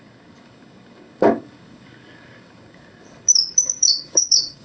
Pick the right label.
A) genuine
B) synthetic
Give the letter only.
B